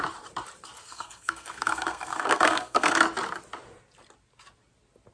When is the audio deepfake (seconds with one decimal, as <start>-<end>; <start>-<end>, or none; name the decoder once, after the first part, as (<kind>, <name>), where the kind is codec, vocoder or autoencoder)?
0.8-3.0 (codec, SNAC)